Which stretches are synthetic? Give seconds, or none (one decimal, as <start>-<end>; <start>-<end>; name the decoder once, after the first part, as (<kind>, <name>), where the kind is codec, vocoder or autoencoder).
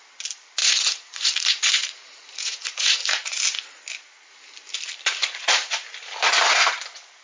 0.6-3.4 (vocoder, Vocos); 5.2-5.7